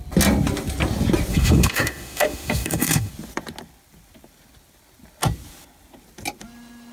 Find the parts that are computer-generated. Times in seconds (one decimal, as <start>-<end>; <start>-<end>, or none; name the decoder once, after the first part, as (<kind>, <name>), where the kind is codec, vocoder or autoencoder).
1.3-3.1 (autoencoder, DAC-VAE)